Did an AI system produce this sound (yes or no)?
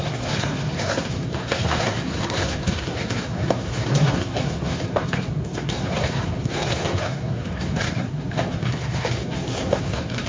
yes